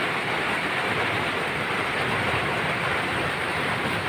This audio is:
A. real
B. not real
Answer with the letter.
A